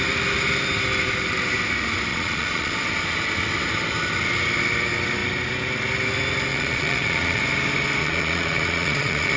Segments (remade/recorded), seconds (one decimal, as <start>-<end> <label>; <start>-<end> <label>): 0.0-2.1 recorded; 2.1-2.7 remade; 2.7-6.5 recorded; 6.5-7.4 remade; 7.4-8.0 recorded; 8.0-9.4 remade